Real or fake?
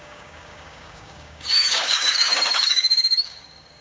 fake